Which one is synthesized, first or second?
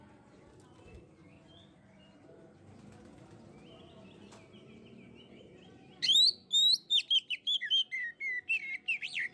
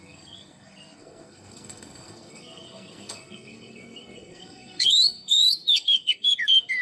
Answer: second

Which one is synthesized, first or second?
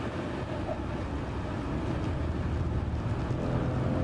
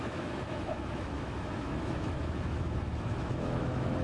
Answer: second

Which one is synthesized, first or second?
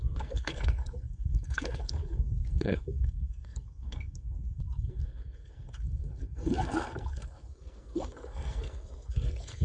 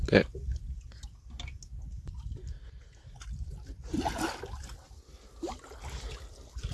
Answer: first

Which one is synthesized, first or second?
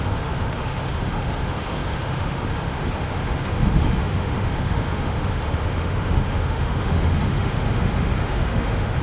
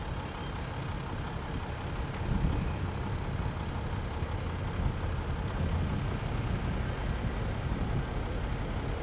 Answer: first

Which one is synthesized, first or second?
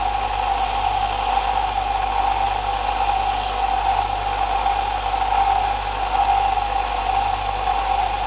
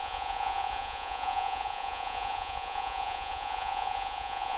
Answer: second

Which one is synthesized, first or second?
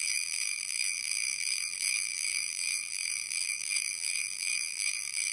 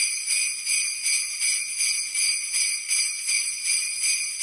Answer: first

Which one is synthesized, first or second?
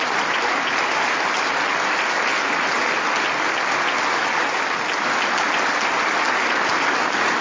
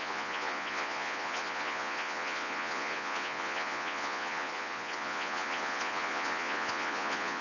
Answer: second